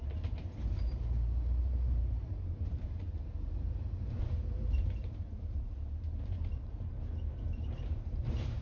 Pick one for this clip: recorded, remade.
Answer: remade